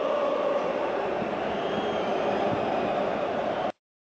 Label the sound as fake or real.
fake